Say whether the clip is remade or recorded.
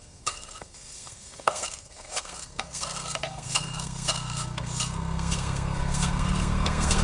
remade